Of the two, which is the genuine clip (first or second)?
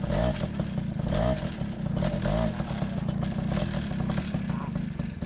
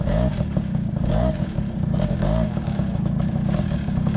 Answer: first